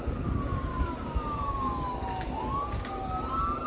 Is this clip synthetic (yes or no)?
yes